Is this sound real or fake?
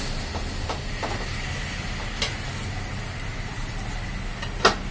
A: real